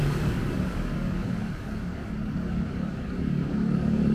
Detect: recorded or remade remade